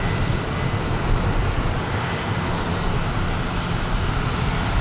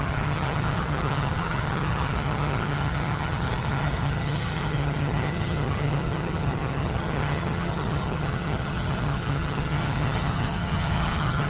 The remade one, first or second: second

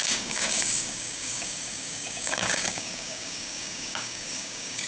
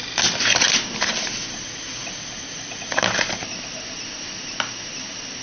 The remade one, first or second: first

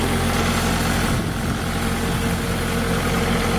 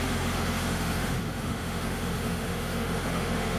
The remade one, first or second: second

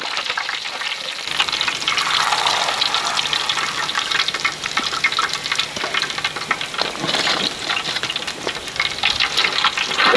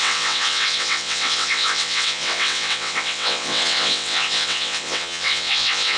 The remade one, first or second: second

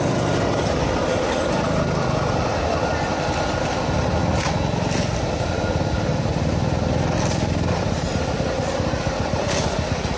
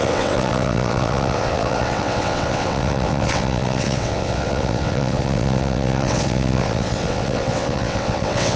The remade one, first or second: second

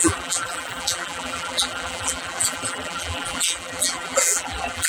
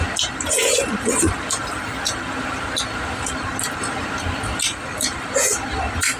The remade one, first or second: first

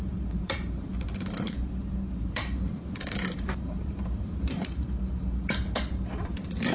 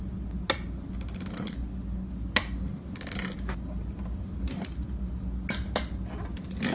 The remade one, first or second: first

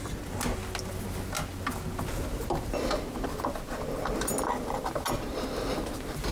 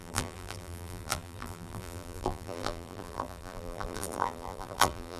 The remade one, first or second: second